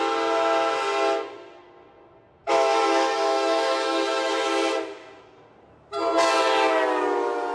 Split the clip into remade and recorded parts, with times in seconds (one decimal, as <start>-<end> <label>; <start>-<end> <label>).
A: 0.0-2.4 recorded; 2.4-4.3 remade; 4.3-7.5 recorded